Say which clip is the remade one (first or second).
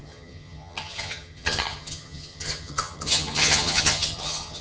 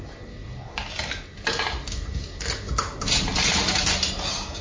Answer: first